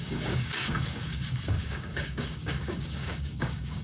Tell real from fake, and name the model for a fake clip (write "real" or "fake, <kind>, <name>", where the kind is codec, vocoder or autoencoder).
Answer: fake, codec, DAC